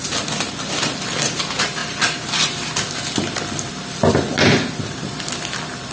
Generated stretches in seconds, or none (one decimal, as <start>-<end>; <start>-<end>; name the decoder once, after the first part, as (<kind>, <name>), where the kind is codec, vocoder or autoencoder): none